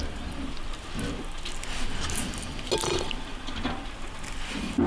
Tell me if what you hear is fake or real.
real